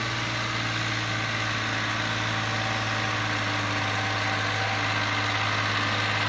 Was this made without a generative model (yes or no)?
yes